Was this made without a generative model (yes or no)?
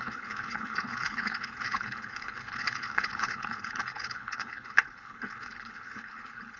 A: no